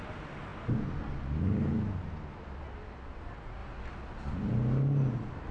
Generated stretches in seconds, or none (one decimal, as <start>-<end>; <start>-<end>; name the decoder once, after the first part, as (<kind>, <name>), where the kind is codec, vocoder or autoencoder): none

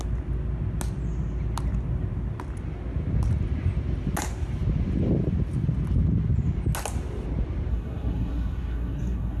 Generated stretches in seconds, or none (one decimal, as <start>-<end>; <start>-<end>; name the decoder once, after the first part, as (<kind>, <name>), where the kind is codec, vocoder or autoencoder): 7.7-9.4 (codec, SNAC)

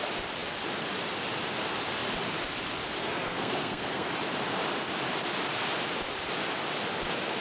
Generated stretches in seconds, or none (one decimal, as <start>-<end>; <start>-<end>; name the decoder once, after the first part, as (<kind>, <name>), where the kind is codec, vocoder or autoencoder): 3.0-4.1 (codec, SNAC)

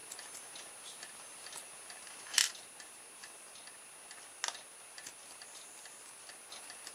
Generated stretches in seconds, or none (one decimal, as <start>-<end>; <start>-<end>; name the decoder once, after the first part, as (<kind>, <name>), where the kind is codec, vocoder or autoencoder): none